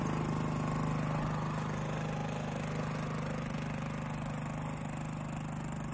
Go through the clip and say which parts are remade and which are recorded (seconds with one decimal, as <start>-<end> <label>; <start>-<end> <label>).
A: 0.0-5.9 recorded